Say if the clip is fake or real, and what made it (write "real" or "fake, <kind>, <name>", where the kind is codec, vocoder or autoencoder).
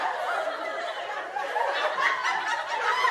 real